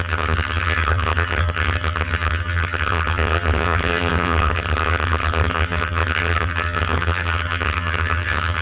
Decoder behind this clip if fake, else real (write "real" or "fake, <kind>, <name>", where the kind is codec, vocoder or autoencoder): fake, vocoder, HiFi-GAN